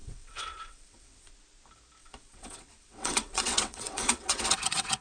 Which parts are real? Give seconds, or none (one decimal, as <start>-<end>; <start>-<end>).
1.3-2.0